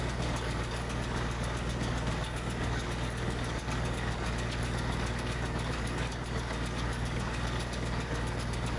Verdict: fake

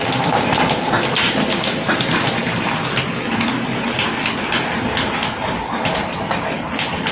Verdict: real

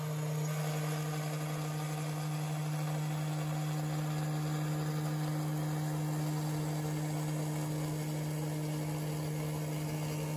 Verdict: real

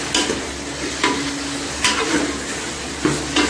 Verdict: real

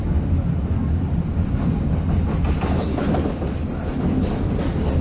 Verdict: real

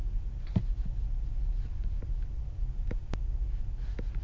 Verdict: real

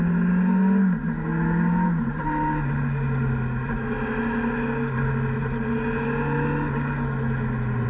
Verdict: real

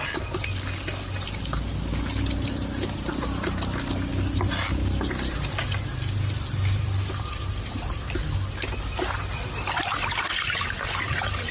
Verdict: fake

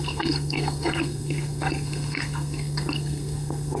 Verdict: fake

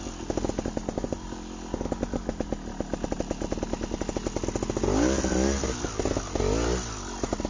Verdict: real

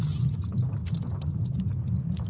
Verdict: real